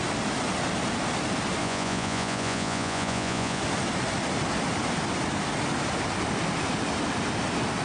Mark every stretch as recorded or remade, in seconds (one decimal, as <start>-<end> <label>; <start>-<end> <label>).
0.0-1.6 recorded; 1.6-3.6 remade; 3.6-7.8 recorded